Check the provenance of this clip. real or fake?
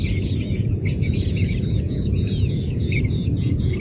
fake